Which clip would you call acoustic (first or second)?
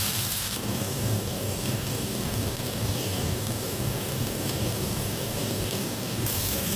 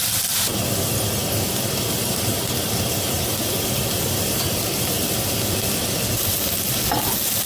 second